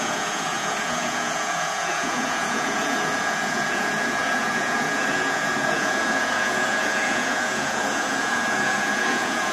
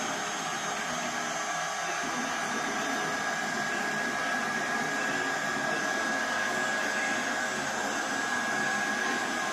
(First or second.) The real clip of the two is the second